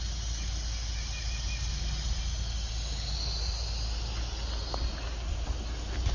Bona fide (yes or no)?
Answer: yes